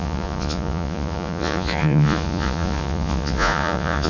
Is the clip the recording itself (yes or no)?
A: no